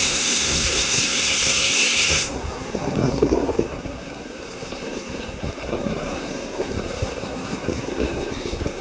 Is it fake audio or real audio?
fake